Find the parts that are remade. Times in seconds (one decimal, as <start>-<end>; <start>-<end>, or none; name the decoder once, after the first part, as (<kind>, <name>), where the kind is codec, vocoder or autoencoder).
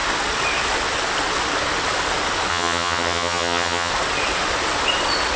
2.5-3.9 (vocoder, HiFi-GAN)